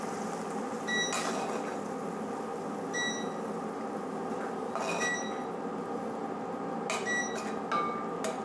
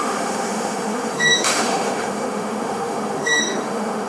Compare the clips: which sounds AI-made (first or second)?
second